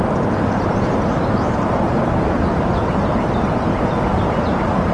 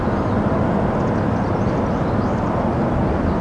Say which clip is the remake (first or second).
first